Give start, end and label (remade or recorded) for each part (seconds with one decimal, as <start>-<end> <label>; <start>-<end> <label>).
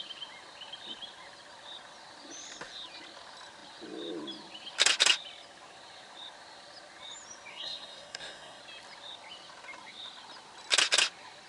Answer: 0.0-7.5 recorded; 7.5-8.6 remade; 8.6-11.5 recorded